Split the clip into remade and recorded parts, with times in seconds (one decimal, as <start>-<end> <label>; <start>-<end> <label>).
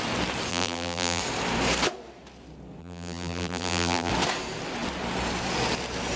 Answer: 0.0-0.5 recorded; 0.5-1.2 remade; 1.2-2.8 recorded; 2.8-4.1 remade; 4.1-6.2 recorded